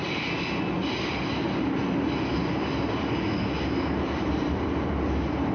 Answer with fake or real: real